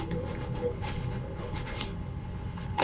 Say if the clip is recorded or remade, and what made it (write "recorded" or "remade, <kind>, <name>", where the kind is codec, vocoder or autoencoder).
remade, codec, HILCodec